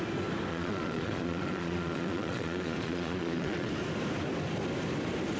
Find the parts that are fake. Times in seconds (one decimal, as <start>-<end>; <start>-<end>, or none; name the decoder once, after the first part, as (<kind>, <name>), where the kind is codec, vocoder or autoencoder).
0.5-3.7 (vocoder, Vocos)